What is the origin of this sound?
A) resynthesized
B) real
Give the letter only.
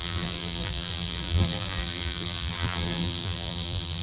A